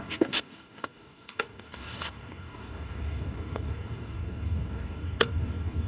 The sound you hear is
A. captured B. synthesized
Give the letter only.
B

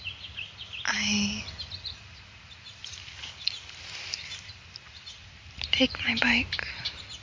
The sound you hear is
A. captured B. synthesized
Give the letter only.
A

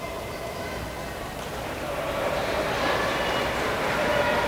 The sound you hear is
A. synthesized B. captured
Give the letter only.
A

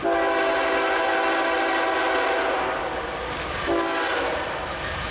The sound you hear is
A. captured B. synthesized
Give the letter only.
A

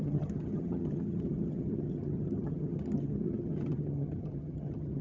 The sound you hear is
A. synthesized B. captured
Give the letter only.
A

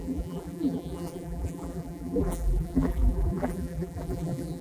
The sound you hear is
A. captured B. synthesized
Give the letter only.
B